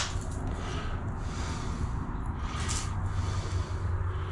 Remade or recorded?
recorded